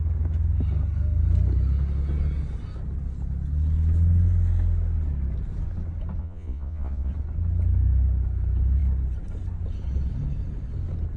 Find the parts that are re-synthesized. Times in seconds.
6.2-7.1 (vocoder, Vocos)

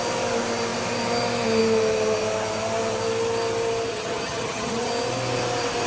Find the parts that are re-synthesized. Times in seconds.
3.9-4.9 (vocoder, HiFi-GAN)

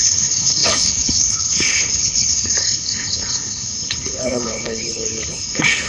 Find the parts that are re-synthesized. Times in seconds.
0.0-5.9 (codec, HILCodec)

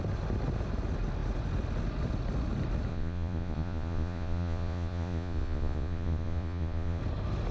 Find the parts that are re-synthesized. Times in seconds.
2.9-7.0 (vocoder, Vocos)

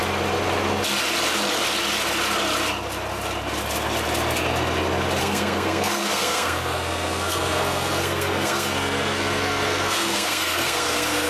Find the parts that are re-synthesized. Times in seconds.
5.2-11.3 (codec, SNAC)

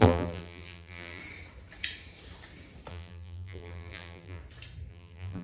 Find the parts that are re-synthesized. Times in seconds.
0.0-1.2 (vocoder, BigVGAN v2); 2.9-4.4; 4.9-5.4

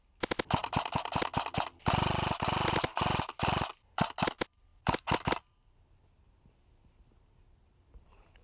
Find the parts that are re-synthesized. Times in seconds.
none

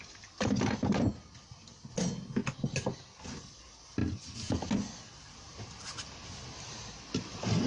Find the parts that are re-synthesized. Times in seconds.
none